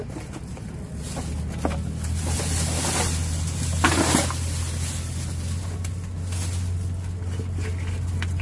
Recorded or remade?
recorded